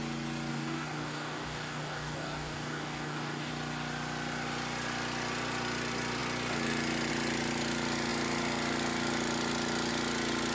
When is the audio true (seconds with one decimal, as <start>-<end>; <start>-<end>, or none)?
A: 0.0-0.5; 3.5-10.5